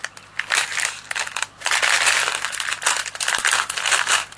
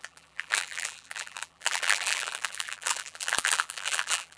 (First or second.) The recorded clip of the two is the first